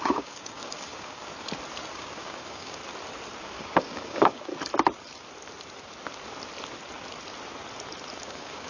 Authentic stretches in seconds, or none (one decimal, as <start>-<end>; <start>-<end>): 1.3-1.9; 2.8-3.4; 4.5-8.2

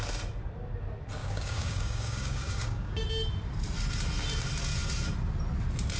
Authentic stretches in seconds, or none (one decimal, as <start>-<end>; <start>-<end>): 0.0-1.2; 3.0-6.0

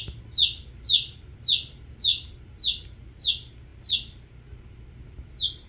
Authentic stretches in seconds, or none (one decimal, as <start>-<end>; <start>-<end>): 0.0-5.7

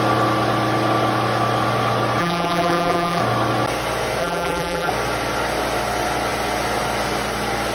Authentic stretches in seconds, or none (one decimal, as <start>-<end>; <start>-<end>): 0.0-2.2; 3.2-4.2; 4.9-7.7

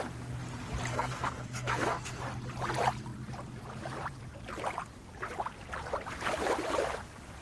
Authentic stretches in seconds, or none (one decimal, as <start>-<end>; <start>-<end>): 0.0-0.9; 2.2-7.4